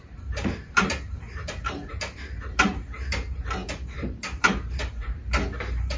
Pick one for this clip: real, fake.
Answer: fake